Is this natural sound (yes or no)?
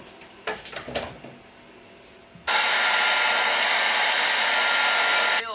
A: yes